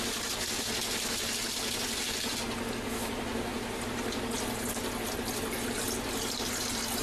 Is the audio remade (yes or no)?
no